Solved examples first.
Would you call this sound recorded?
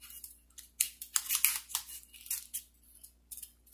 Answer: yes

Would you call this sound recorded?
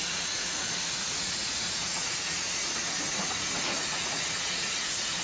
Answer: no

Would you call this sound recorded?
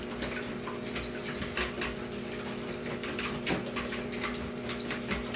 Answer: yes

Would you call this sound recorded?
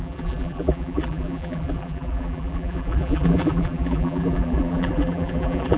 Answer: no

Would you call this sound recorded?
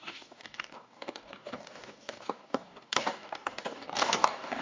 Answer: no